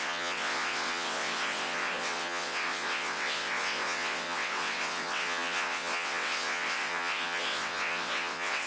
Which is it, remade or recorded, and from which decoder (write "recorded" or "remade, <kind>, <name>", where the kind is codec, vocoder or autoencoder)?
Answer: remade, vocoder, WaveNeXt